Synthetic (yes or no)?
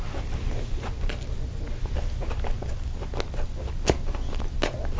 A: no